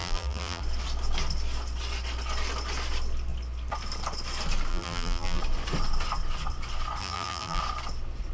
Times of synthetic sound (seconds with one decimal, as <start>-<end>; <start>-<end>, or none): 0.0-0.6; 4.7-5.4; 7.0-7.6